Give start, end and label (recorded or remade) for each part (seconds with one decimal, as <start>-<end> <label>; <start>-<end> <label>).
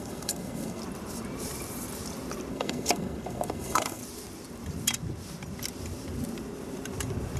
0.0-0.8 remade; 0.8-2.5 recorded; 2.5-4.0 remade; 4.0-7.4 recorded